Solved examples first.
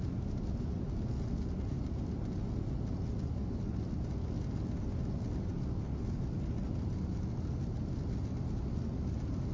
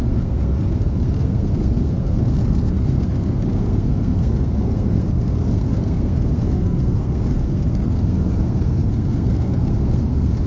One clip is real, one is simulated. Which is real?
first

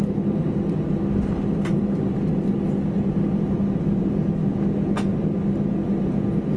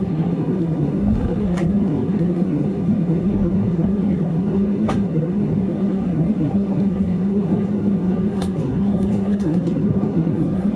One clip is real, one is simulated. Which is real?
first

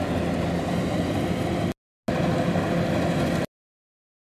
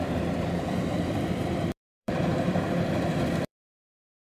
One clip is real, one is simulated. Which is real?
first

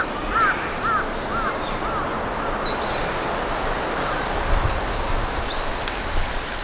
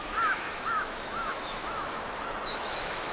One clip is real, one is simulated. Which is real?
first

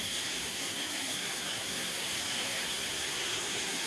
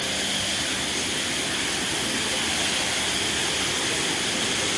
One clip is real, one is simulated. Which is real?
second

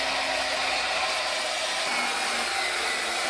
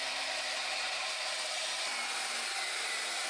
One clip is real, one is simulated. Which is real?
first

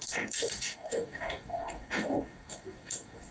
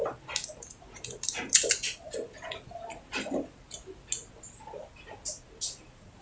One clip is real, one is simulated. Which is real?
second